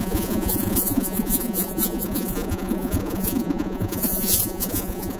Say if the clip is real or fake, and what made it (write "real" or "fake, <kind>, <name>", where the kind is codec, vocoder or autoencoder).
fake, vocoder, Vocos